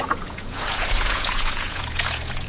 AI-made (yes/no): yes